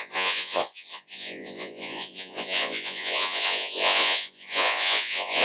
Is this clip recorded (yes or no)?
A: no